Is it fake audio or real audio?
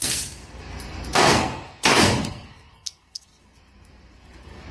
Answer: fake